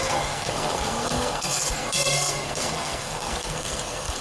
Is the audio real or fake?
fake